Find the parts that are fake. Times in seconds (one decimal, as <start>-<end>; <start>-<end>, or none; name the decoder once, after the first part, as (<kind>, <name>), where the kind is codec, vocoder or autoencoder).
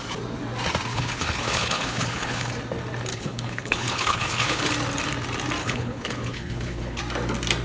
0.9-2.5 (codec, HILCodec); 3.1-4.7; 5.6-7.0